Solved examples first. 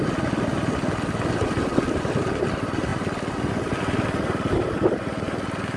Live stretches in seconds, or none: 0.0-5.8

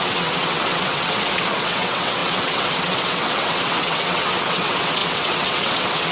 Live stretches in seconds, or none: none

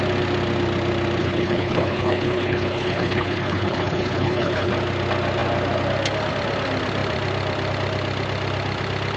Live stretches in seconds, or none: 0.0-1.2; 4.7-9.2

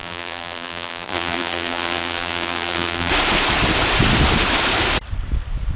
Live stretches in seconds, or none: 3.1-5.8

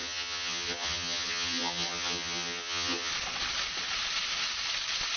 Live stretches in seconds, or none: 3.1-5.2